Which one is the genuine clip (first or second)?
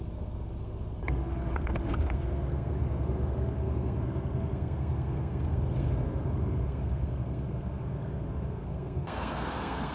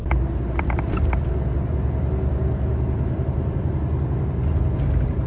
second